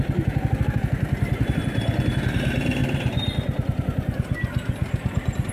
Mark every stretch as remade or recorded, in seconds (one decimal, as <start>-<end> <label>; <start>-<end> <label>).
0.0-5.5 recorded